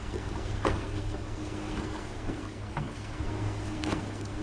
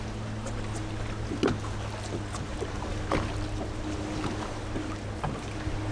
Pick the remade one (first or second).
first